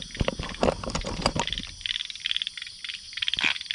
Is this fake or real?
real